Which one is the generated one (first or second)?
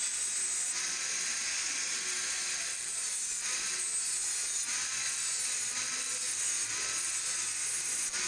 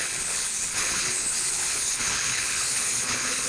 second